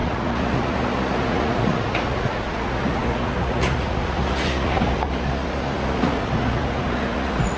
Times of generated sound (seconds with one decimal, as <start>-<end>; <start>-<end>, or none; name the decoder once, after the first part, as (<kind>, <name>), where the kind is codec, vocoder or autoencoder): 0.0-7.6 (vocoder, Vocos)